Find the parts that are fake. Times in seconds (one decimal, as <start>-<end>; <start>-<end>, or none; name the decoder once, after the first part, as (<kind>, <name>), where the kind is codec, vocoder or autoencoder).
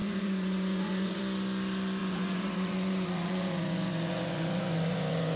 0.0-1.2 (vocoder, Vocos); 2.0-5.4